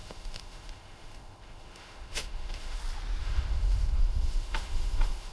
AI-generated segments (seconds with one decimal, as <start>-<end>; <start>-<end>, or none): 0.0-2.8; 3.2-5.3